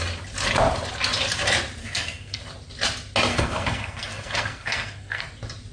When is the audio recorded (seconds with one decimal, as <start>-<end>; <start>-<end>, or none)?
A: 0.0-1.8; 2.4-3.3; 5.2-5.7